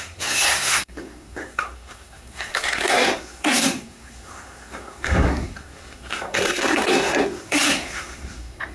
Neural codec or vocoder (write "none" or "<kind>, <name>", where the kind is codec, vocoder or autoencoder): codec, SNAC